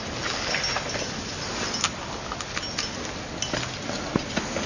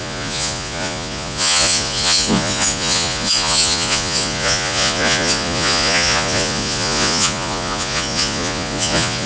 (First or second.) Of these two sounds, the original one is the first